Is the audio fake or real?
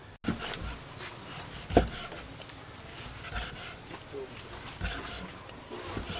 real